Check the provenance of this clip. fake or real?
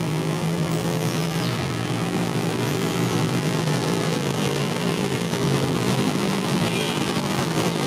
fake